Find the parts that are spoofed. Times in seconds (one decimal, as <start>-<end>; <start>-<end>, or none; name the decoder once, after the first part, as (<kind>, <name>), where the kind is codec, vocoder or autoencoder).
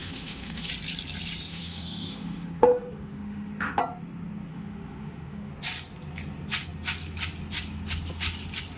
0.0-0.7 (autoencoder, DAC-VAE); 1.5-3.8; 4.5-5.5